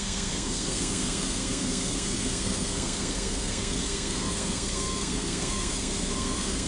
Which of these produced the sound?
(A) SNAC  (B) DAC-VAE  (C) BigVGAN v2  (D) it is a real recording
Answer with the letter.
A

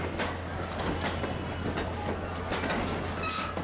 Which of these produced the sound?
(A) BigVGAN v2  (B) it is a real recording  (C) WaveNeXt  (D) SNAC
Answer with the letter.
B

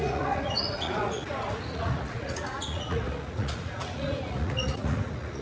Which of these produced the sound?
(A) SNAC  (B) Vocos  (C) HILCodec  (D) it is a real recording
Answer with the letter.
B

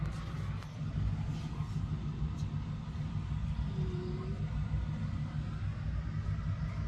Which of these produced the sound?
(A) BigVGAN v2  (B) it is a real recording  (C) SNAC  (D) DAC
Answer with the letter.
B